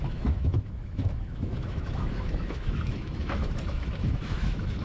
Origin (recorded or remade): remade